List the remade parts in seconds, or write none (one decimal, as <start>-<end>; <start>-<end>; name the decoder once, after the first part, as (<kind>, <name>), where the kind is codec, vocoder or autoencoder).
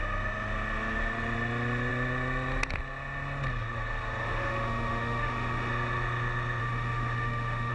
4.2-5.7 (autoencoder, DAC-VAE); 6.6-7.7